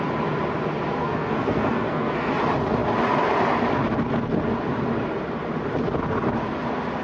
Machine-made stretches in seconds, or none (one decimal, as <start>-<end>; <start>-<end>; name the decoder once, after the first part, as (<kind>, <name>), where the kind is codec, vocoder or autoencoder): 1.0-2.3 (codec, SNAC)